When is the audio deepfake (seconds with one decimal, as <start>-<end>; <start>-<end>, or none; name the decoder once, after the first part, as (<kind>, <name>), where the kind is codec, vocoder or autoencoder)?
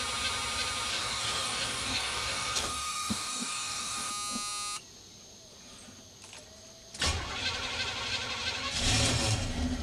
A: 0.9-4.1 (codec, DAC)